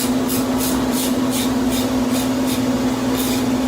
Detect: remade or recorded recorded